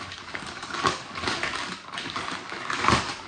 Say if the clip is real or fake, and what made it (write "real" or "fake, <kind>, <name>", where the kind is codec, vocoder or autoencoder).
fake, codec, DAC